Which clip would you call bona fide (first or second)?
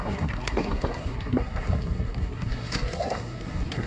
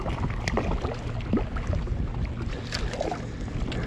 second